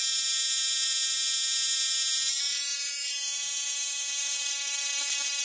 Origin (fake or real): fake